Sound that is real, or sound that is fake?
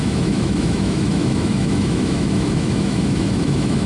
fake